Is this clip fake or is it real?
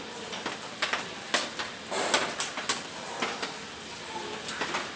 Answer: real